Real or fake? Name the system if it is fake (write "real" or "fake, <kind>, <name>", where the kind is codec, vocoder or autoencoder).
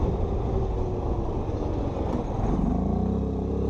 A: real